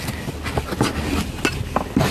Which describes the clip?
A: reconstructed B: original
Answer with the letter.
B